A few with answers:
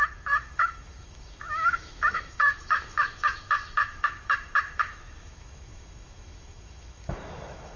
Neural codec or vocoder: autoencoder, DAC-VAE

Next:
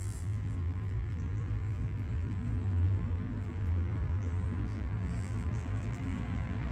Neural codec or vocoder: vocoder, BigVGAN v2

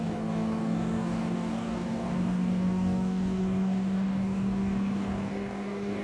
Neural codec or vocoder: codec, DAC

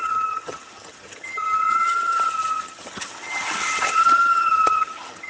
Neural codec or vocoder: vocoder, HiFi-GAN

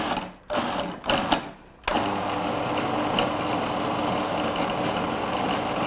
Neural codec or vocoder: none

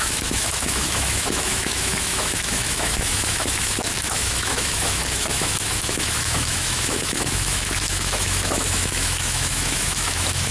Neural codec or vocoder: autoencoder, DAC-VAE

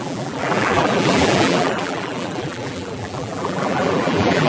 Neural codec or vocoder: vocoder, BigVGAN v2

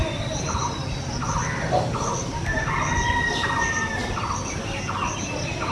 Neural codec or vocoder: none